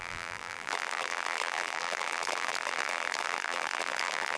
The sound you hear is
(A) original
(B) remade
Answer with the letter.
B